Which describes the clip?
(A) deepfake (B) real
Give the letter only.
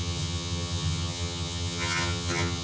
A